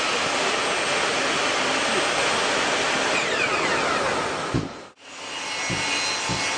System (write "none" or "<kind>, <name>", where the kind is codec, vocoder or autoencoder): none